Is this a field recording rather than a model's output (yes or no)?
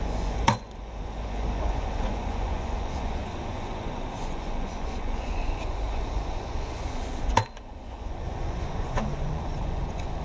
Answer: no